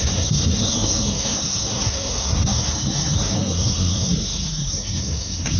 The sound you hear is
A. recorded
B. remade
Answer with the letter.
B